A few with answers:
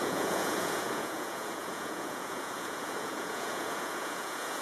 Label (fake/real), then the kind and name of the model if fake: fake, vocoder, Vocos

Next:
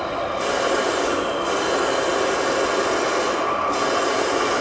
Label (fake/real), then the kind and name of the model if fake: real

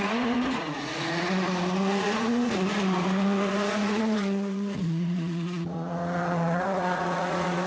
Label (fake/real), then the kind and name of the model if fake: fake, vocoder, Vocos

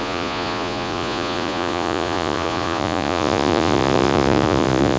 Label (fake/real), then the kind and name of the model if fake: fake, vocoder, Vocos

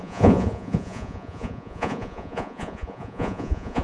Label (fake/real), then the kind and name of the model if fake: fake, vocoder, Vocos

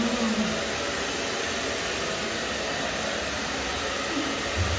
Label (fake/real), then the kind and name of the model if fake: real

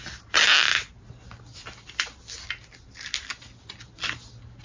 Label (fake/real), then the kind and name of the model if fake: real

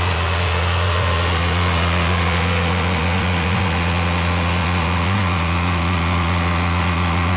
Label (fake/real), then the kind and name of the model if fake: fake, vocoder, Vocos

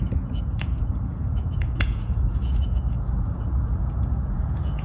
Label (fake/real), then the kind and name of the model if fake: fake, vocoder, Vocos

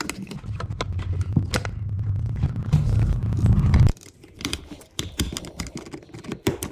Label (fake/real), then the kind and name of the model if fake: real